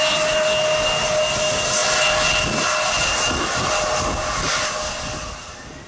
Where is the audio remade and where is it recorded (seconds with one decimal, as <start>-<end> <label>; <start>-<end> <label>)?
0.0-5.9 recorded